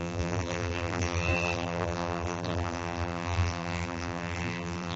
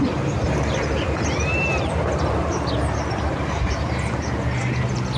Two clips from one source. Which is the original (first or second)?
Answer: second